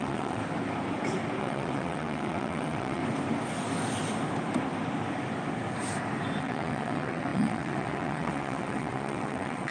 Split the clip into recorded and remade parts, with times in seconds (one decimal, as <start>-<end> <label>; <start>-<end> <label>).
0.0-0.4 remade; 0.4-1.4 recorded; 1.4-3.0 remade; 3.0-6.4 recorded; 6.4-9.7 remade